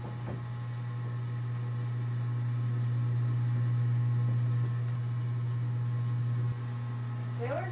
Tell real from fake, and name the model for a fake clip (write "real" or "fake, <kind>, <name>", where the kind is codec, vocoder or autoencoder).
real